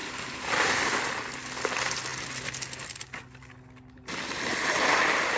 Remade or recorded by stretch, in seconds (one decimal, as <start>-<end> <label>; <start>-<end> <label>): 0.0-5.4 recorded